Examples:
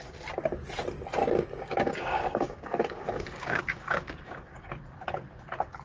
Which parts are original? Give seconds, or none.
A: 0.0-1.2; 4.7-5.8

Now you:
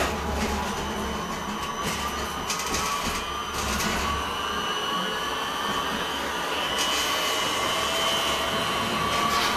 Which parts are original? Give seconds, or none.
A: 0.0-6.1; 6.7-9.6

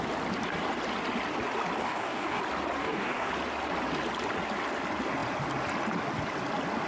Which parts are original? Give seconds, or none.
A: 0.0-1.8; 2.4-2.8; 3.3-6.9